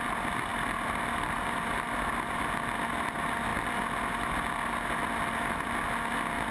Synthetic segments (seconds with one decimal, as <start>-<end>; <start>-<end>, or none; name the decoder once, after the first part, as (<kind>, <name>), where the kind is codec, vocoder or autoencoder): none